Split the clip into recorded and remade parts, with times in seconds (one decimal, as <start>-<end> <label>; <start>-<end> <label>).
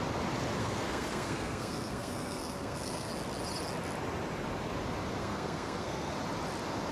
0.0-0.6 recorded; 0.6-3.1 remade; 3.1-5.2 recorded; 5.2-6.1 remade; 6.1-6.9 recorded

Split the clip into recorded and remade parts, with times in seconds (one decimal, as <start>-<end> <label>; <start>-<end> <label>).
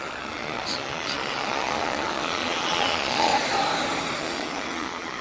0.0-3.3 remade; 3.3-4.2 recorded; 4.2-5.2 remade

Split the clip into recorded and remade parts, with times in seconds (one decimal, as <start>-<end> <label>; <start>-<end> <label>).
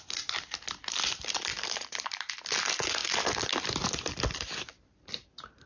0.0-1.5 recorded; 1.5-2.3 remade; 2.3-3.0 recorded; 3.0-5.1 remade; 5.1-5.7 recorded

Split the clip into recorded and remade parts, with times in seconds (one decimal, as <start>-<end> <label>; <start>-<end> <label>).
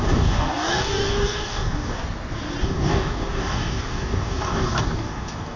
0.0-2.0 remade; 2.0-2.6 recorded; 2.6-5.6 remade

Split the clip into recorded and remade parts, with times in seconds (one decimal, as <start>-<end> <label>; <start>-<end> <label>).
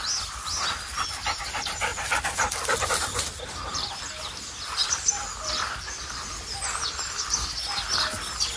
0.0-1.9 recorded; 1.9-4.2 remade; 4.2-4.8 recorded; 4.8-5.5 remade; 5.5-8.6 recorded